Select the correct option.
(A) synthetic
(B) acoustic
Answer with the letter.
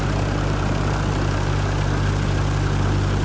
B